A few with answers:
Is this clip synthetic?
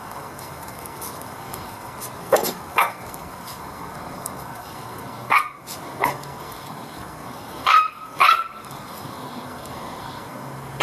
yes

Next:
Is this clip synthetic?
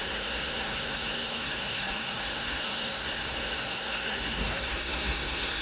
yes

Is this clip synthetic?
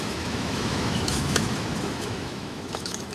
yes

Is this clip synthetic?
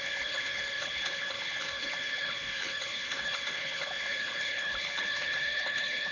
yes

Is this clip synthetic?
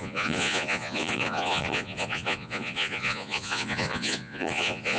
yes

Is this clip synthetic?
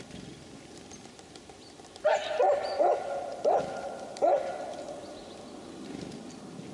no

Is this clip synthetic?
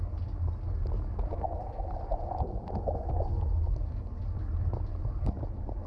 no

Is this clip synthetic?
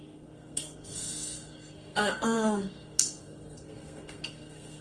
yes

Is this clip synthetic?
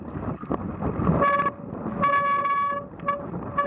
no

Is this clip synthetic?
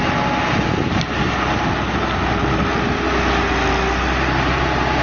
no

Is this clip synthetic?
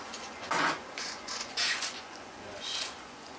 yes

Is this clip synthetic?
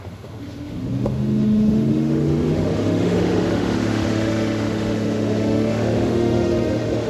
yes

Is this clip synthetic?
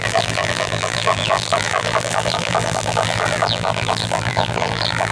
yes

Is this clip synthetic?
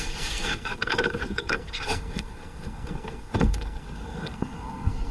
yes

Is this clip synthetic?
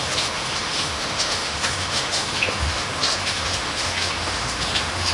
yes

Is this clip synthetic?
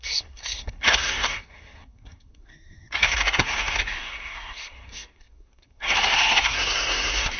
yes